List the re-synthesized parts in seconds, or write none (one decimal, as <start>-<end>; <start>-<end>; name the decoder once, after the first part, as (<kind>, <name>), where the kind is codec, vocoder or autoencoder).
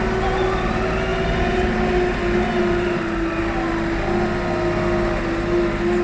none